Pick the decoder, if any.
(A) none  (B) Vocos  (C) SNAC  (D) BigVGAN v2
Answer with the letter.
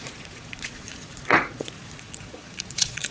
B